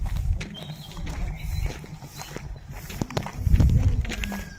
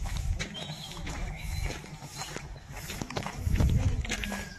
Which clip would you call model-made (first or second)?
second